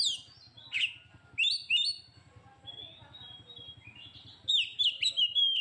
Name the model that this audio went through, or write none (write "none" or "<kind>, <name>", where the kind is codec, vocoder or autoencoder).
none